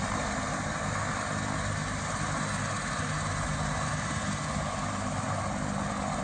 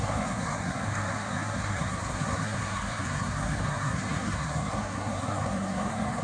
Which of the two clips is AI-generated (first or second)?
second